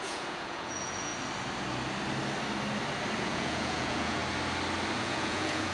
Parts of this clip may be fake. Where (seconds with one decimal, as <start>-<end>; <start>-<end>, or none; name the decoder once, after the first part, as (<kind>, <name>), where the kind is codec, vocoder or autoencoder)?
0.0-1.1 (vocoder, Vocos); 3.2-4.2; 5.0-5.7